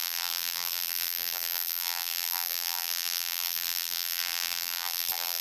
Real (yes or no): no